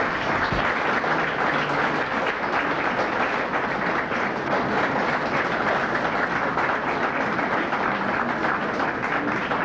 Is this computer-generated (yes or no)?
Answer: no